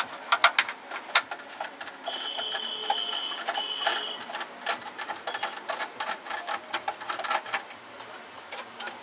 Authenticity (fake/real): real